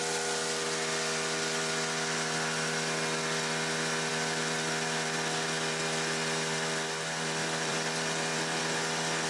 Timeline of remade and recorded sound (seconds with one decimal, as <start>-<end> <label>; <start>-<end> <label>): 0.0-4.1 recorded; 4.1-8.6 remade; 8.6-9.3 recorded